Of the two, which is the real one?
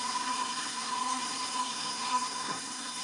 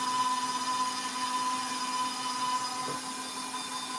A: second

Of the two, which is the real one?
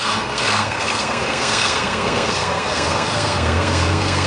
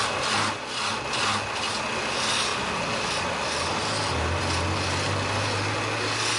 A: second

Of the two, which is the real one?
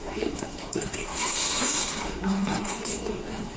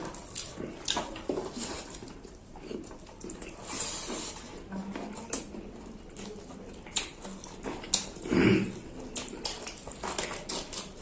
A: second